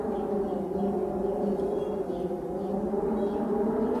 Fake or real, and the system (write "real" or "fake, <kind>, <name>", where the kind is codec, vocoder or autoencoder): real